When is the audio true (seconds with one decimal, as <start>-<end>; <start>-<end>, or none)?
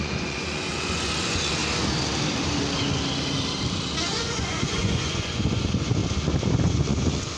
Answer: 1.6-4.0; 6.0-6.6